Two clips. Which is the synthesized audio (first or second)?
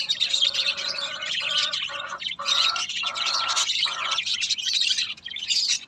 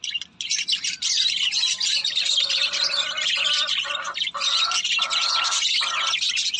first